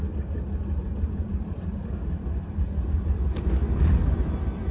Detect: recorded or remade recorded